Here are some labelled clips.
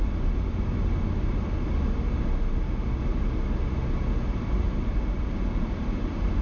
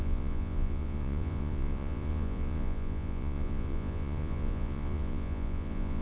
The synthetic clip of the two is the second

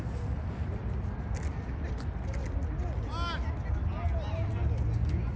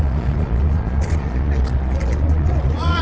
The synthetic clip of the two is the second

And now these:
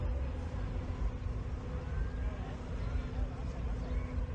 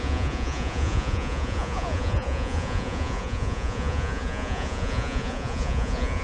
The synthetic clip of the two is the second